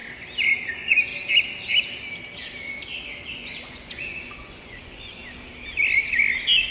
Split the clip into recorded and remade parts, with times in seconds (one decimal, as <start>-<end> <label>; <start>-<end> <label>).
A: 0.0-0.7 recorded; 0.7-1.1 remade; 1.1-3.3 recorded; 3.3-5.2 remade; 5.2-6.7 recorded